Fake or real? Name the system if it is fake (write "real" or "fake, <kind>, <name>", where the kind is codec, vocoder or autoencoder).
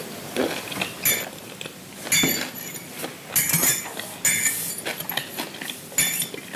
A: real